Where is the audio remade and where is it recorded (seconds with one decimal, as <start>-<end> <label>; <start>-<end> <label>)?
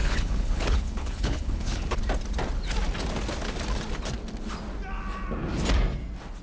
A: 0.0-2.0 remade; 2.0-6.4 recorded